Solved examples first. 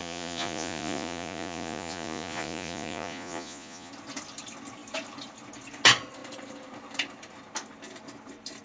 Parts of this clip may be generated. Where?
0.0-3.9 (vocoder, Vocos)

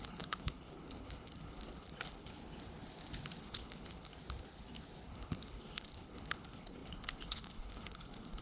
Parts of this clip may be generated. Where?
0.0-2.3 (codec, HILCodec); 3.4-4.1; 5.1-8.4

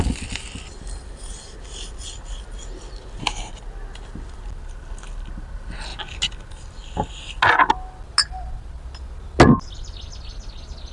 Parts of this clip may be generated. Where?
none

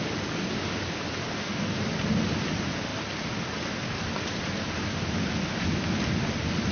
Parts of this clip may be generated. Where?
none

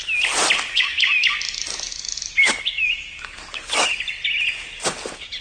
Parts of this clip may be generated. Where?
0.7-3.9 (codec, DAC)

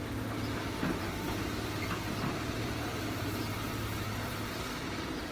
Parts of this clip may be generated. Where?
1.0-5.3 (vocoder, BigVGAN v2)

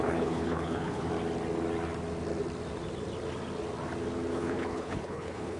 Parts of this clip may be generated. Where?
0.0-1.1 (codec, HILCodec); 4.3-5.6

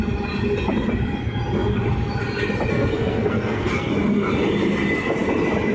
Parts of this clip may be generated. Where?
2.7-3.9 (codec, SNAC)